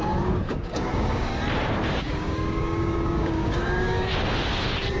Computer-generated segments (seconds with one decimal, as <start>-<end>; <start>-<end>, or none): 0.0-1.3; 2.0-4.1